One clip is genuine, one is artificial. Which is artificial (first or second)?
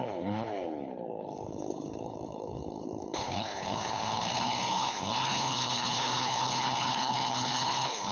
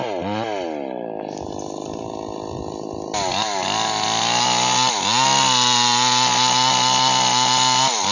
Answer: first